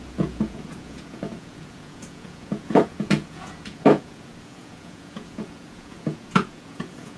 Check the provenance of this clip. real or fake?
fake